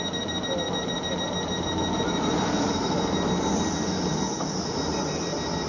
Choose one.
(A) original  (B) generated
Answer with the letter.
A